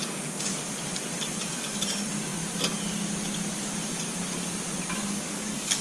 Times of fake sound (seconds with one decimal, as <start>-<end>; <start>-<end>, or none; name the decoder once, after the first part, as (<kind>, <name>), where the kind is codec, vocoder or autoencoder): 0.0-0.5 (codec, DAC); 5.0-5.8